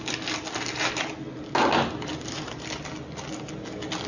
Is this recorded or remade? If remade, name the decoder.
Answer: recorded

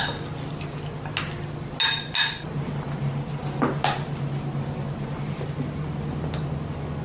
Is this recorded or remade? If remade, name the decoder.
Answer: recorded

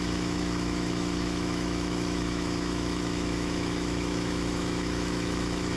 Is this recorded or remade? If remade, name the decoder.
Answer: remade, autoencoder, DAC-VAE